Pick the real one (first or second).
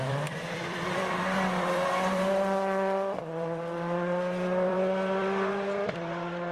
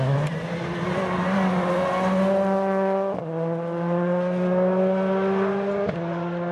second